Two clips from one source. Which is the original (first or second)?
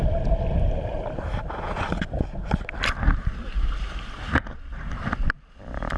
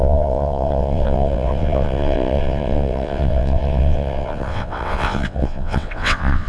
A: first